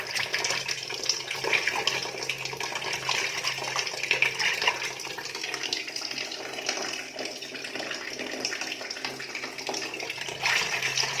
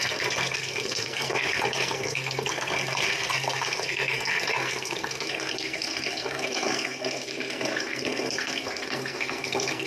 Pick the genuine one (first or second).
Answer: first